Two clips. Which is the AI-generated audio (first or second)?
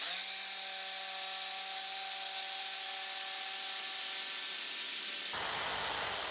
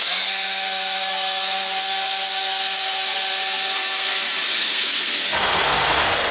second